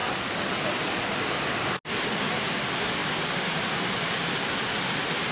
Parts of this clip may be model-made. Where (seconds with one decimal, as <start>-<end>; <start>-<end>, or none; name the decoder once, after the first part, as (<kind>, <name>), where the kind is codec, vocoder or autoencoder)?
3.0-3.9 (vocoder, BigVGAN v2)